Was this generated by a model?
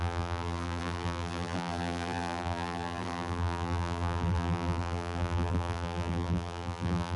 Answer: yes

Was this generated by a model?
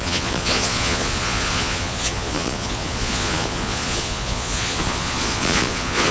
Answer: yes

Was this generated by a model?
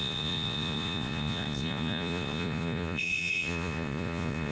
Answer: yes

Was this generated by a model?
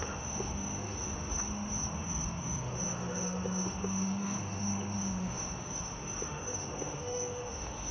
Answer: yes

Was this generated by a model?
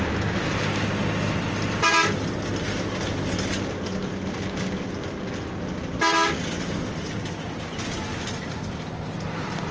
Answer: no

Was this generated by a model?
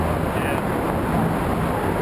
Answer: no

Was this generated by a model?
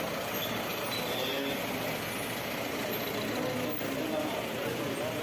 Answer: no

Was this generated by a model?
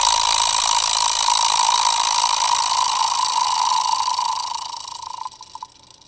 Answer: no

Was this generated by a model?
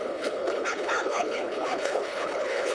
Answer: yes